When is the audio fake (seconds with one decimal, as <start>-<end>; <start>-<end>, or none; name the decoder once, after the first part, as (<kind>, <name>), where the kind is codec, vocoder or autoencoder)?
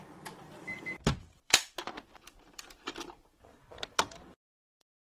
0.0-5.2 (vocoder, BigVGAN v2)